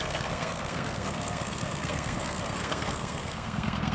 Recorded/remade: remade